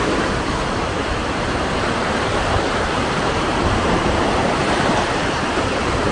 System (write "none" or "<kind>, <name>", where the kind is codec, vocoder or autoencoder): vocoder, BigVGAN v2